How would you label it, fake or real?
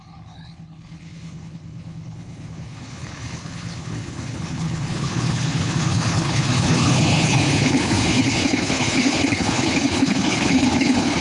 fake